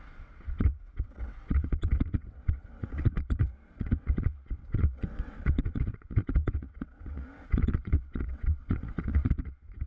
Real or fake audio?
fake